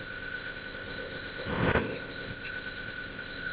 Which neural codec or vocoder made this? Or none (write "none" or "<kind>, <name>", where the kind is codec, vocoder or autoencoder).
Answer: codec, ZipCodec